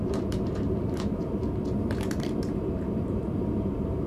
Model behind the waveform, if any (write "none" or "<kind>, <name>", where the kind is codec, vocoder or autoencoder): vocoder, BigVGAN v2